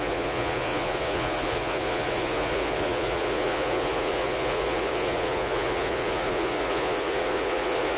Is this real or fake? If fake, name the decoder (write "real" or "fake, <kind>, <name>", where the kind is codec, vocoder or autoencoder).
fake, vocoder, Vocos